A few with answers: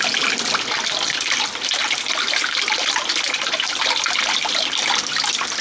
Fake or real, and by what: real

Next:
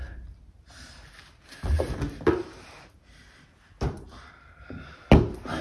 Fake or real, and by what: real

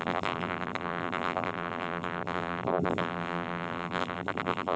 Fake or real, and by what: fake, vocoder, BigVGAN v2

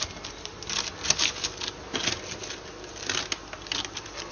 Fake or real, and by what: real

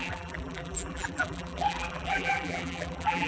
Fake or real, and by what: fake, vocoder, BigVGAN v2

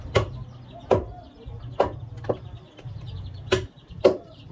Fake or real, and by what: real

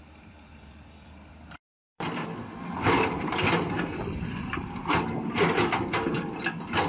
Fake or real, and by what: fake, vocoder, BigVGAN v2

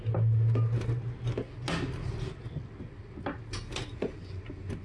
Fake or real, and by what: real